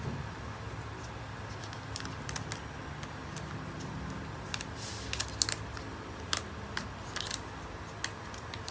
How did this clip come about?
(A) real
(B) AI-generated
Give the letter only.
A